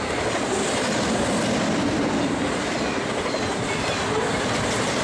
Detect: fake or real real